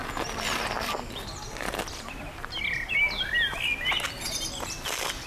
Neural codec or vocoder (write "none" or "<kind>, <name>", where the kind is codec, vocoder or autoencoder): none